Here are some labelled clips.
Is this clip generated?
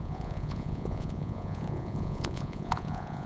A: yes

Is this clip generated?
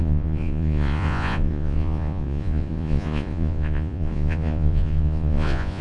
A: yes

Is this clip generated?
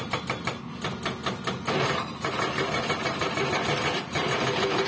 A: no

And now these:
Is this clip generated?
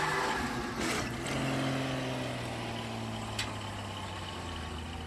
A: no